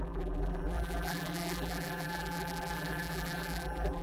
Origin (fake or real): fake